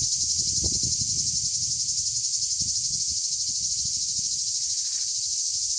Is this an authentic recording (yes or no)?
yes